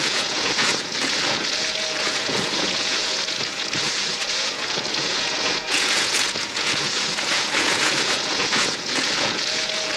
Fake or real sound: fake